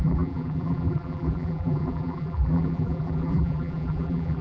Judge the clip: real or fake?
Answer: fake